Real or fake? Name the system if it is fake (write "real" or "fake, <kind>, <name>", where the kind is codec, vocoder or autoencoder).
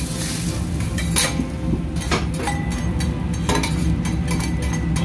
real